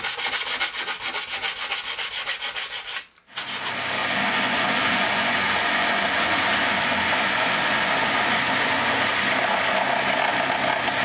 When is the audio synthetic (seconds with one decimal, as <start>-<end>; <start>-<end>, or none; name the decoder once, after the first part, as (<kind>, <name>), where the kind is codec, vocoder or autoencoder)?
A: 4.0-9.0 (vocoder, Vocos)